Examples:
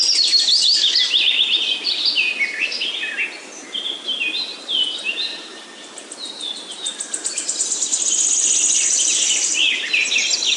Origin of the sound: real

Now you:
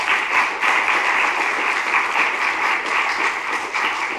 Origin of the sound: real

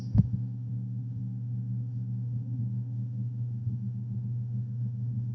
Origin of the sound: fake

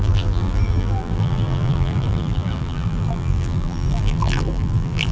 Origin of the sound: fake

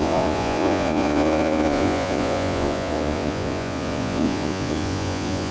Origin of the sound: fake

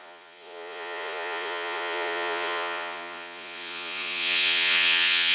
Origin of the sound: fake